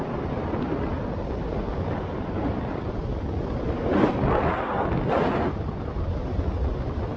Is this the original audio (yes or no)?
yes